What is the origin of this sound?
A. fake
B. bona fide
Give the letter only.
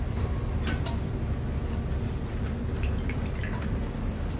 B